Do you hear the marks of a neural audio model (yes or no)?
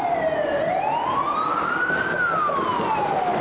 no